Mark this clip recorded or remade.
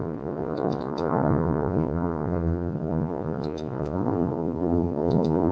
remade